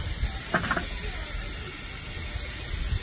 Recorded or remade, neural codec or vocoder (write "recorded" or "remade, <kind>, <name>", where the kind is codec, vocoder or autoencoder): recorded